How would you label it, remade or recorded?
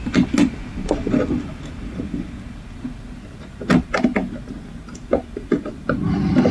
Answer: recorded